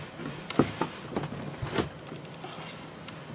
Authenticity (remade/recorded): recorded